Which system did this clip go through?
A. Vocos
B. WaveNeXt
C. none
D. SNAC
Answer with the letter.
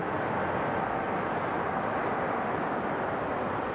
C